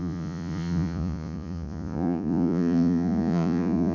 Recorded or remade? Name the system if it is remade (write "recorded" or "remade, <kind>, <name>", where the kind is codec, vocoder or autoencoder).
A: remade, vocoder, Vocos